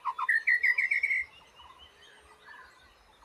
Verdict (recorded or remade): recorded